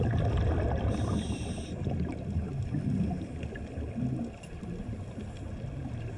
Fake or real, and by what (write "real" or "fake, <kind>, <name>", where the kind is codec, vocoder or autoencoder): real